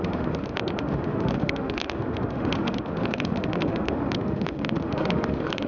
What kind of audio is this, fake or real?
fake